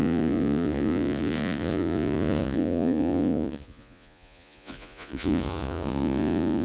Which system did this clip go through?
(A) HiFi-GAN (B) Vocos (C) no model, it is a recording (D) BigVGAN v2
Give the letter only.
B